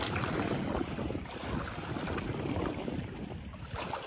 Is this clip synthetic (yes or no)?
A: no